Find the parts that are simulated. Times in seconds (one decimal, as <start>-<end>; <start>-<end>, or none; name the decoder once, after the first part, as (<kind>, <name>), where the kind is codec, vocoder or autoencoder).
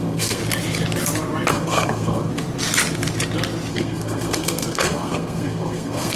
0.0-0.4 (codec, SNAC); 1.5-2.3; 3.7-6.2